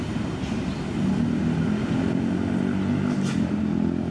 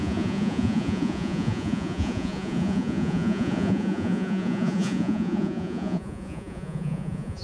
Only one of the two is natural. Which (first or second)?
first